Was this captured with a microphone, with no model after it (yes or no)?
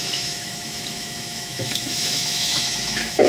no